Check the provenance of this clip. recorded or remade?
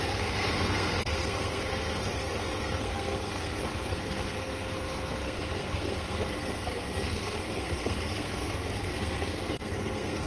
remade